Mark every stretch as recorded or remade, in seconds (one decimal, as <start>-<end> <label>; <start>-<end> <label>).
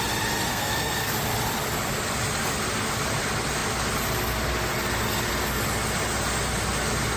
0.0-0.5 recorded; 0.5-1.1 remade; 1.1-7.2 recorded